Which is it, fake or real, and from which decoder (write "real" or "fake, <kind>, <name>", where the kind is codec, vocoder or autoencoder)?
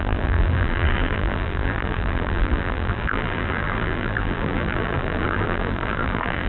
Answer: fake, vocoder, BigVGAN v2